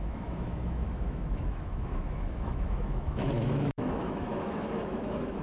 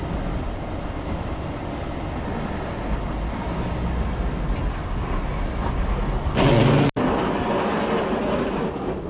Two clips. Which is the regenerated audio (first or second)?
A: first